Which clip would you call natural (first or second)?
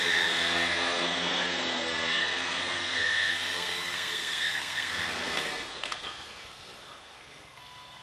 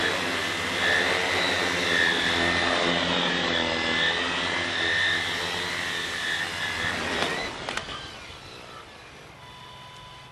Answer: second